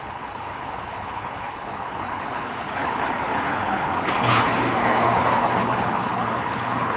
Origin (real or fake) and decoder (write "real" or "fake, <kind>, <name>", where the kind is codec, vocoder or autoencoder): fake, codec, HILCodec